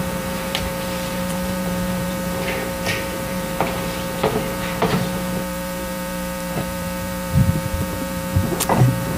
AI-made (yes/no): yes